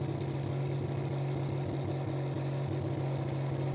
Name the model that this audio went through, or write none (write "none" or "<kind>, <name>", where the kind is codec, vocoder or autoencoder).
none